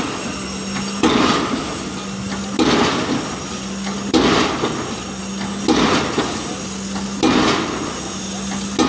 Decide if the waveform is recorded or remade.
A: recorded